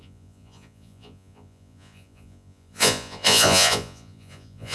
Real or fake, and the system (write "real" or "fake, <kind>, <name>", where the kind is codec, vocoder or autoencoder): fake, vocoder, Vocos